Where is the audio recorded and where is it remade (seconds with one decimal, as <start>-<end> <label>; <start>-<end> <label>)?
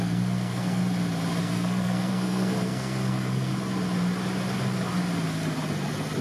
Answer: 0.0-0.8 remade; 0.8-1.4 recorded; 1.4-3.5 remade; 3.5-6.2 recorded